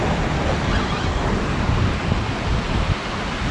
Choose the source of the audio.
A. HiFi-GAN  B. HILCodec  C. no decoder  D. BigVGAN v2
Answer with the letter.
C